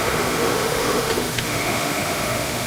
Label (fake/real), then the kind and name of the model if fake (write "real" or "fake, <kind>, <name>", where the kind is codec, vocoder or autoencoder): fake, autoencoder, DAC-VAE